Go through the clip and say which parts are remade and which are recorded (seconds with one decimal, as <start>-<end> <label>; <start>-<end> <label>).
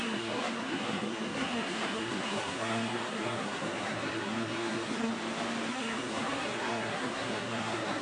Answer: 0.0-5.1 remade; 5.1-5.7 recorded; 5.7-8.0 remade